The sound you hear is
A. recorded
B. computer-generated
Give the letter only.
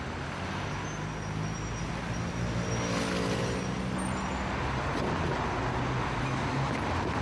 A